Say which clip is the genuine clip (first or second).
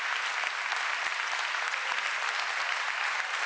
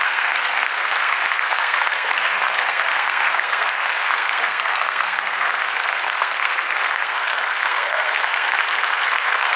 first